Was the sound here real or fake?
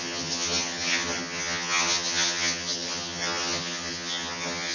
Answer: fake